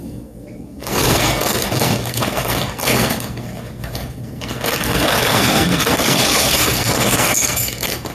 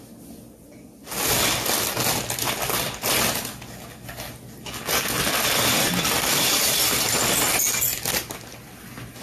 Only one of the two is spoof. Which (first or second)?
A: first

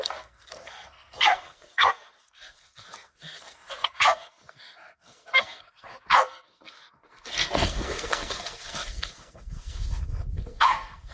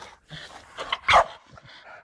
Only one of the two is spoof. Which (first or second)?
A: first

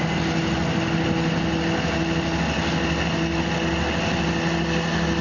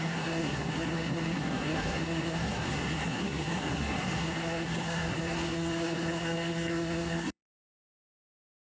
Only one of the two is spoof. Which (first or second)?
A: second